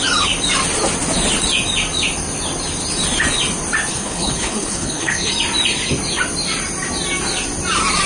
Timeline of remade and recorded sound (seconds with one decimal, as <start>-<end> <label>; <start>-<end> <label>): 0.0-3.9 recorded; 3.9-5.3 remade; 5.3-8.1 recorded